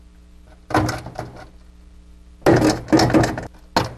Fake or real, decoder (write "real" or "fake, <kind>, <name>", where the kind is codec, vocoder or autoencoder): real